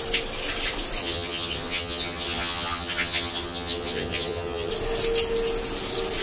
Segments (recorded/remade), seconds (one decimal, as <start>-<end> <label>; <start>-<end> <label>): 0.0-1.0 recorded; 1.0-4.7 remade; 4.7-6.2 recorded